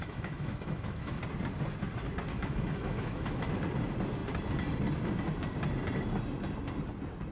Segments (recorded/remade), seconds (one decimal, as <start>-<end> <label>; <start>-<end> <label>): 0.0-1.2 remade; 1.2-2.3 recorded; 2.3-3.5 remade; 3.5-7.3 recorded